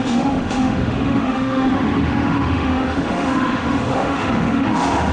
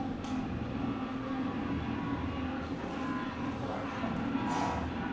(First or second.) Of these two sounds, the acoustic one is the second